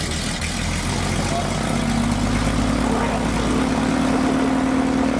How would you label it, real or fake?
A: real